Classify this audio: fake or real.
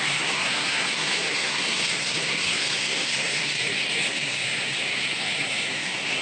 fake